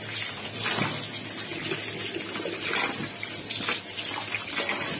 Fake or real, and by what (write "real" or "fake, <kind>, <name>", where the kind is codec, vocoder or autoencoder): real